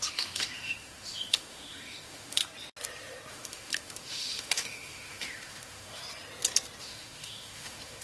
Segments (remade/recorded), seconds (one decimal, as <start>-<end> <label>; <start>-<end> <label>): 0.0-2.4 remade; 2.4-3.3 recorded; 3.3-6.0 remade; 6.0-6.8 recorded; 6.8-8.0 remade